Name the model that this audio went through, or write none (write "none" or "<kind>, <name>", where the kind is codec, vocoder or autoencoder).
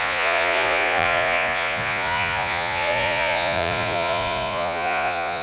vocoder, Vocos